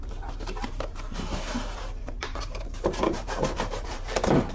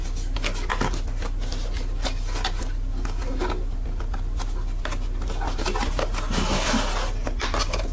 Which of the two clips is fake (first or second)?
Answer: first